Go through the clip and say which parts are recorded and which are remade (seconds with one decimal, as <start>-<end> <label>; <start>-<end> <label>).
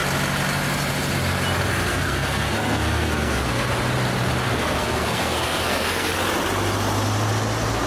0.0-1.9 recorded; 1.9-3.7 remade; 3.7-4.6 recorded; 4.6-6.1 remade; 6.1-7.9 recorded